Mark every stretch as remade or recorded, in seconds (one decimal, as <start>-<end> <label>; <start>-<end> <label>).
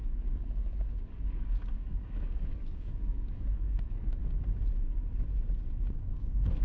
0.0-4.2 remade; 4.2-6.0 recorded; 6.0-6.6 remade